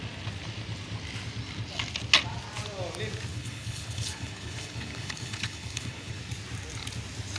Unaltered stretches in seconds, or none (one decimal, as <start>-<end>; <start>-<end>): 0.0-3.3; 6.2-7.4